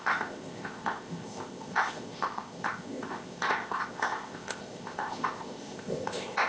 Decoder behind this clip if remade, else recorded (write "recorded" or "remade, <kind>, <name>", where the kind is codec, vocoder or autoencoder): remade, codec, ZipCodec